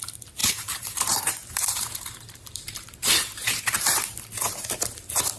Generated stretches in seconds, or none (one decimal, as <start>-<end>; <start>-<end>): 0.4-3.6